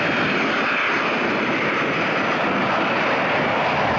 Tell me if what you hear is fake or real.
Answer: real